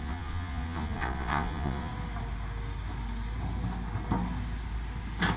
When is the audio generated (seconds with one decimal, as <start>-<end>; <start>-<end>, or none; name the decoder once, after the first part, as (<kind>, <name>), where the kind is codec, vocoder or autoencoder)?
0.0-1.9 (vocoder, Vocos)